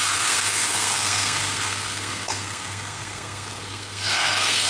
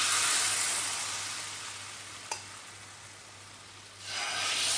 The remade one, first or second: first